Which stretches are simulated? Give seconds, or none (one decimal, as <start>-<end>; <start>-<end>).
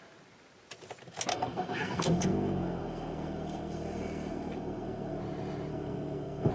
1.3-5.2; 5.7-6.5